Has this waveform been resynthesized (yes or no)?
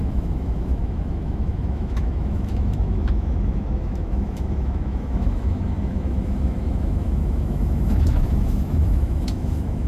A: yes